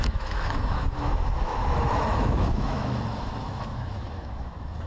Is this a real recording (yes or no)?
no